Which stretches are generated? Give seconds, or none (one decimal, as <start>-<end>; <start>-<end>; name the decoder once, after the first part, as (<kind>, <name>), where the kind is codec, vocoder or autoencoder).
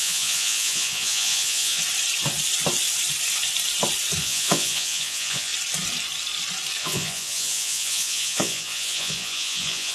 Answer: 0.0-1.8 (vocoder, Vocos); 4.2-5.5; 6.8-9.9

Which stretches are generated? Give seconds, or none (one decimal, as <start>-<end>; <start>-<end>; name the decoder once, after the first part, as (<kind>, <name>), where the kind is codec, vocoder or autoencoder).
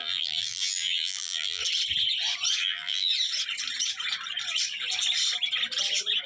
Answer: 0.0-1.6 (vocoder, BigVGAN v2); 2.6-3.1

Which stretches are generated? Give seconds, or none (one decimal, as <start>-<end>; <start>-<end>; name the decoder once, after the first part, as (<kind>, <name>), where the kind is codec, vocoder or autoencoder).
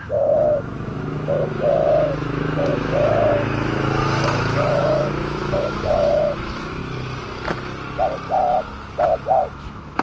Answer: 0.0-6.8 (autoencoder, DAC-VAE); 9.4-10.0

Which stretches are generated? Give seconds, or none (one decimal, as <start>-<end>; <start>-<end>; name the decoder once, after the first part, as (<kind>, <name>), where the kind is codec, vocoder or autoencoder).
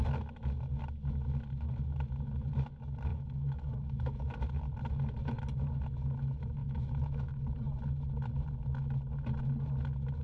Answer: 3.1-4.4 (autoencoder, DAC-VAE); 6.6-7.4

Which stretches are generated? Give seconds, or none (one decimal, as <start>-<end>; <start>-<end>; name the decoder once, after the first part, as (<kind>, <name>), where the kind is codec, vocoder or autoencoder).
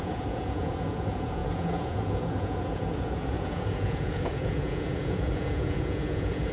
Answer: 0.0-6.5 (vocoder, Vocos)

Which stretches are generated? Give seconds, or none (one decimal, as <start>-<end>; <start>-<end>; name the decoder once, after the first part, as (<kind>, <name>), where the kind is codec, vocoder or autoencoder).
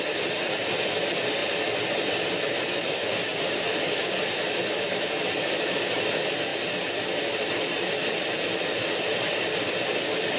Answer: 0.0-6.5 (vocoder, BigVGAN v2); 7.4-10.4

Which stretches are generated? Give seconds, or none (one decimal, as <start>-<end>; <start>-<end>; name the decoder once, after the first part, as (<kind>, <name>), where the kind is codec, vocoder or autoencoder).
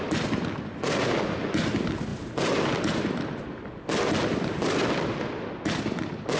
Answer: none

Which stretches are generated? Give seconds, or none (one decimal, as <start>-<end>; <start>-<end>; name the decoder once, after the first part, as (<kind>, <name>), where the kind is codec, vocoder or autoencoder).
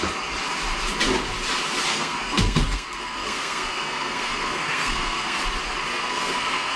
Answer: 1.9-5.4 (codec, SNAC); 5.9-6.8